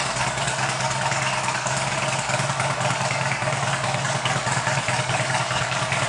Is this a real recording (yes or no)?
no